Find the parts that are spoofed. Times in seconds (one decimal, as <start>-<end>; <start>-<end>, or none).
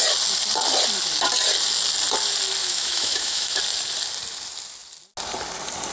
2.6-3.6